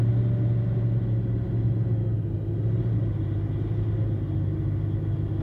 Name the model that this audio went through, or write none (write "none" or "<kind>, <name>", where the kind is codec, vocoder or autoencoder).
none